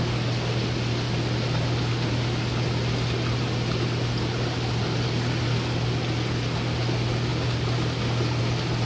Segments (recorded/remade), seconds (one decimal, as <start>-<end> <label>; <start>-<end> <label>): 0.0-8.8 recorded